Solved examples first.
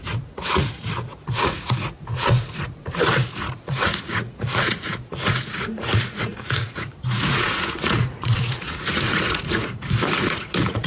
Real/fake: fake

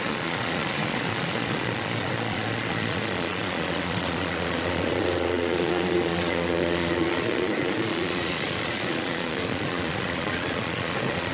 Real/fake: fake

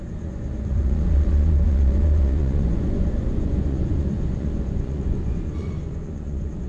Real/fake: fake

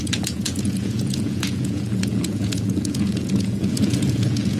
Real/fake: fake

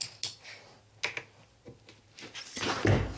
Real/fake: real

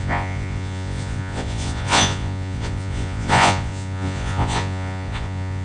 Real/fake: fake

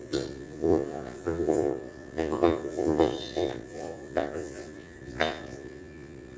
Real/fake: fake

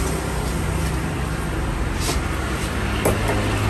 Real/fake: real